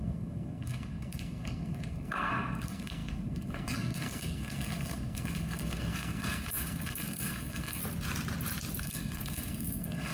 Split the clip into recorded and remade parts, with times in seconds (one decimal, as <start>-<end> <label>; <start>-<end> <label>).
0.0-7.8 remade; 7.8-8.8 recorded; 8.8-10.1 remade